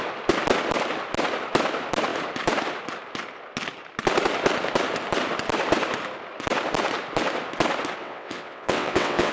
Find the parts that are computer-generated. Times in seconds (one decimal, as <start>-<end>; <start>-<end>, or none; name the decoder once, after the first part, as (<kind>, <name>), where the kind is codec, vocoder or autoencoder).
8.0-9.3 (vocoder, WaveNeXt)